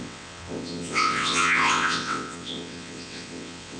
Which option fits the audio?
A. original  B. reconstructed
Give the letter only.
B